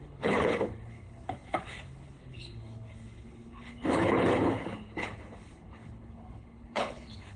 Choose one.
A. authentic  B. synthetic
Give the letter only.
B